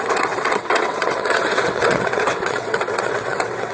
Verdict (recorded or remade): remade